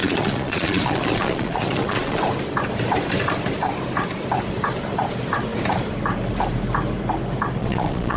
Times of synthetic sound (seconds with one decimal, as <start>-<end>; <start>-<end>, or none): 0.0-2.2; 7.6-8.2